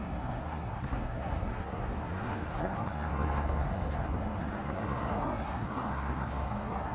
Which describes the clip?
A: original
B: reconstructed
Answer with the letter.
B